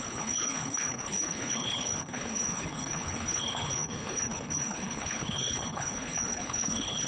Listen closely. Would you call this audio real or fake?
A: fake